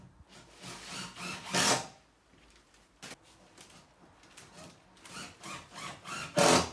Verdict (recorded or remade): recorded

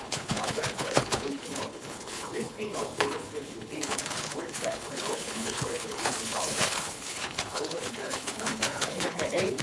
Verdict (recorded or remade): remade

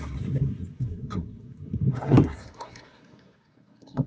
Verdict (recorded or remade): remade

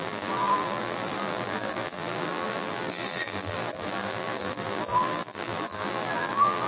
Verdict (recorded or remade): remade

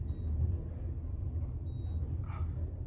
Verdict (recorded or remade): recorded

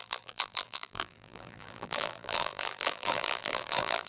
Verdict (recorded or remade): remade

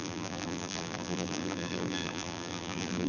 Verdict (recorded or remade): remade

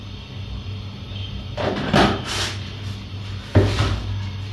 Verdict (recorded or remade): recorded